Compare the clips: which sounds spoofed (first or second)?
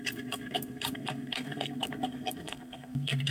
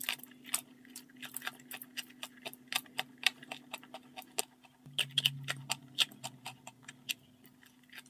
first